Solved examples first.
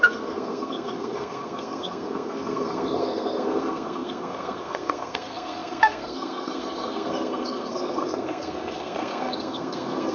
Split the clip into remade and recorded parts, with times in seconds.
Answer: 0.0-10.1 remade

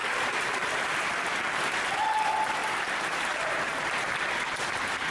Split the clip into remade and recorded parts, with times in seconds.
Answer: 0.0-1.9 remade; 1.9-2.6 recorded; 2.6-3.7 remade; 3.7-5.1 recorded

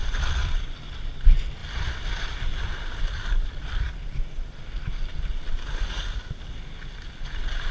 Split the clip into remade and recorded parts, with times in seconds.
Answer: 0.0-1.6 recorded; 1.6-3.9 remade; 3.9-7.7 recorded

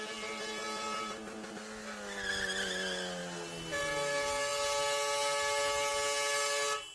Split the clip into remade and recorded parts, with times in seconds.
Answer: 0.0-6.9 recorded

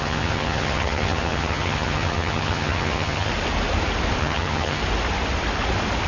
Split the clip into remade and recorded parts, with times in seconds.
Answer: 0.0-3.3 remade; 3.3-4.2 recorded; 4.2-4.8 remade; 4.8-6.1 recorded

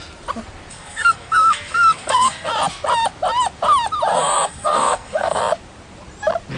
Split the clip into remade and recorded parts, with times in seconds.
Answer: 0.0-0.7 recorded; 0.7-2.5 remade; 2.5-4.1 recorded; 4.1-5.4 remade; 5.4-6.6 recorded